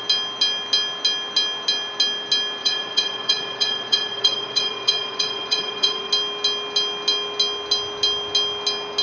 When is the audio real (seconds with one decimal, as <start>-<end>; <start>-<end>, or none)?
0.0-2.6; 6.1-9.0